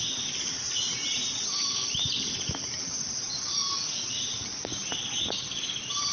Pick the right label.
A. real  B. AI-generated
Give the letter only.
A